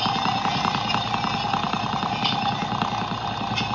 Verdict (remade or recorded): recorded